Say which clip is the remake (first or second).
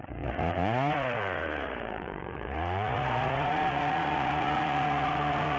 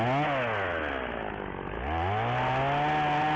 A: first